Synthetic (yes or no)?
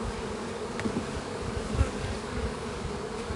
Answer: yes